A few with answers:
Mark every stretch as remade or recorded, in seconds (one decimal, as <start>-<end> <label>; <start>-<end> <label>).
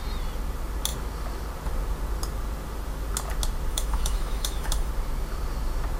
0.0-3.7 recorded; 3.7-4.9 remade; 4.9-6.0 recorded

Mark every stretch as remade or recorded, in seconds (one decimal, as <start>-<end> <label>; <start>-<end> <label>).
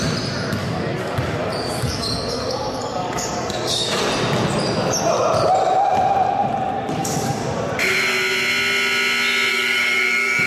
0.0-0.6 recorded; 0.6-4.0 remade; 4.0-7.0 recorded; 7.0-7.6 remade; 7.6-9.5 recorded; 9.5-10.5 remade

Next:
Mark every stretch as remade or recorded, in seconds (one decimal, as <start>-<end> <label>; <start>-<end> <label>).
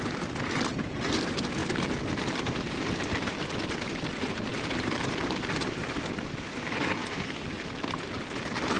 0.0-7.0 remade; 7.0-7.5 recorded; 7.5-8.8 remade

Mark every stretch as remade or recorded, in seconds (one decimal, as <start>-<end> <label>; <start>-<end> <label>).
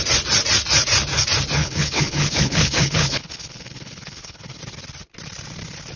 0.0-1.6 recorded; 1.6-4.6 remade; 4.6-6.0 recorded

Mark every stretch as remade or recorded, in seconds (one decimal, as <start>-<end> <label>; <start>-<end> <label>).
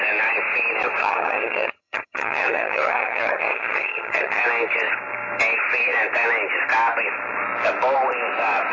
0.0-1.0 recorded; 1.0-4.4 remade; 4.4-8.7 recorded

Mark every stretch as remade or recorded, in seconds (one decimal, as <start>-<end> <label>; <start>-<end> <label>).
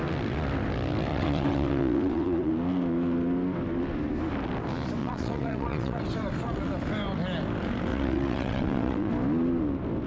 0.0-1.1 recorded; 1.1-2.5 remade; 2.5-5.0 recorded; 5.0-6.0 remade; 6.0-7.9 recorded; 7.9-9.1 remade; 9.1-10.1 recorded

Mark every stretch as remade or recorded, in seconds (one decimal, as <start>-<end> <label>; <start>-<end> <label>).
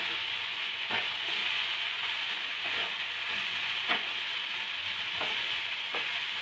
0.0-4.4 remade; 4.4-5.1 recorded; 5.1-6.4 remade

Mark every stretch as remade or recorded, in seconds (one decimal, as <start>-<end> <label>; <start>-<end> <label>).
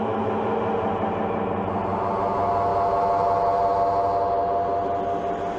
0.0-5.6 recorded